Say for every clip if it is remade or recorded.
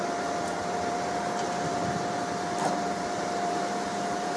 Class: remade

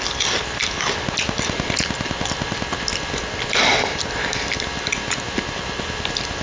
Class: recorded